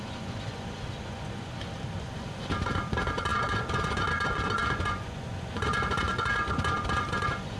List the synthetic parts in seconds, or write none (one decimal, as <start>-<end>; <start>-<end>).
0.0-1.5; 2.0-7.6